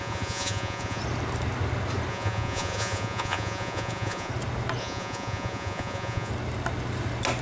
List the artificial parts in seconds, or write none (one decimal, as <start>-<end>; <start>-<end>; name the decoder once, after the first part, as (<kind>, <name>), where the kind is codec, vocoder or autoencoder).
0.0-1.0 (vocoder, Vocos); 2.1-4.3; 4.8-6.3